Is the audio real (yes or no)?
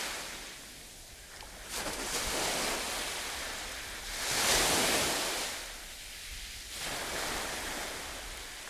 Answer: yes